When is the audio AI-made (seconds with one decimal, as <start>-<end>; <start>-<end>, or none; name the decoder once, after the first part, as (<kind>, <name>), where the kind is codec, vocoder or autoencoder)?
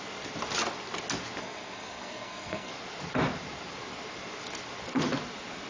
1.4-2.7 (codec, SNAC)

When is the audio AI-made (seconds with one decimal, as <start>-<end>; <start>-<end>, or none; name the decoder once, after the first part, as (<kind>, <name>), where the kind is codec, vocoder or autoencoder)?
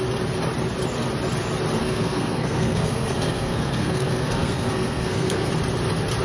1.8-5.5 (codec, SNAC)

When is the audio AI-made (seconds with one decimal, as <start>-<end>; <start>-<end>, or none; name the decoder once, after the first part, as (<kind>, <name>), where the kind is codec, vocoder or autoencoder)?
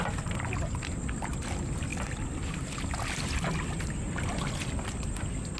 none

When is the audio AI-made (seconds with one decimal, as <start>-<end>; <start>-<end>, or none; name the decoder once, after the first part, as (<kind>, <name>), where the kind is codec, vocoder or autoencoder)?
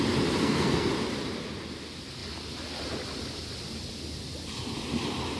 0.4-0.9 (codec, SNAC)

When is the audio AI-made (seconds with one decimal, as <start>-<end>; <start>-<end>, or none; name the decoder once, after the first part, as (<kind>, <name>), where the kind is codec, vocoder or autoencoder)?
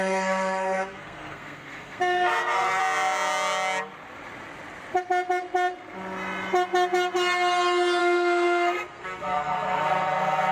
0.0-2.8 (codec, SNAC); 8.0-10.5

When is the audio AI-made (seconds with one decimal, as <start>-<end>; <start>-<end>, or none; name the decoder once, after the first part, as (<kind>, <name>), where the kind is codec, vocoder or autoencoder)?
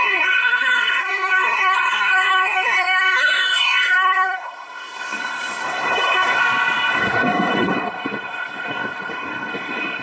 0.0-6.4 (codec, SNAC); 6.9-10.0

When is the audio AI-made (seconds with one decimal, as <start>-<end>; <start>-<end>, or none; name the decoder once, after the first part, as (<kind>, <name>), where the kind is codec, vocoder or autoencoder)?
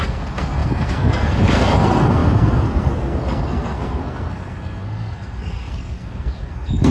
0.0-6.9 (codec, SNAC)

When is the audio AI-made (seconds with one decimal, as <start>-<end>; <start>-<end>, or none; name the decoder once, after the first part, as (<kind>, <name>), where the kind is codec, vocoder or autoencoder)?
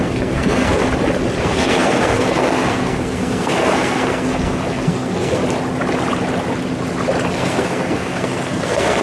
0.0-0.8 (codec, SNAC); 1.4-5.4; 7.3-9.0